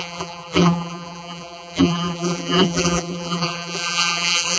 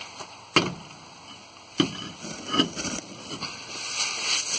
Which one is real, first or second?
second